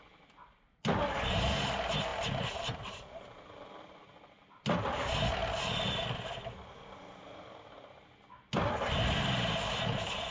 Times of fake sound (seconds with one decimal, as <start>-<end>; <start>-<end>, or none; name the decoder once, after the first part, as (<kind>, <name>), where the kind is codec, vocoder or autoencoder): none